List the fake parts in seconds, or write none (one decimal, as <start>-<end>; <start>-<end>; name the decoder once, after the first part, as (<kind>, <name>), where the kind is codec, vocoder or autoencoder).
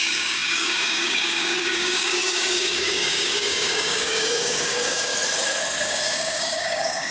0.0-5.1 (codec, DAC); 5.8-7.1